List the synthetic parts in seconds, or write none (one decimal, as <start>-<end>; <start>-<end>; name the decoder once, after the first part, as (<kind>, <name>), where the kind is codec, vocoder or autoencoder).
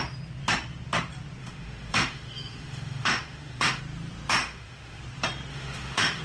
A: 1.4-3.8 (autoencoder, DAC-VAE); 4.4-5.0; 5.5-6.2